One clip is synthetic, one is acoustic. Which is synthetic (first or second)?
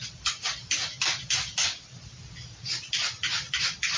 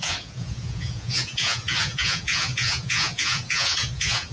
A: second